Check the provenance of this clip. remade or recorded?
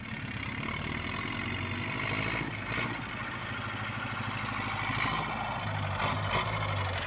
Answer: recorded